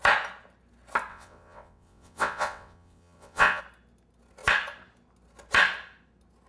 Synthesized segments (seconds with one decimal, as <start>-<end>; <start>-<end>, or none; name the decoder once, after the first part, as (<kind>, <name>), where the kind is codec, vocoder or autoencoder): 1.1-3.6 (vocoder, WaveNeXt)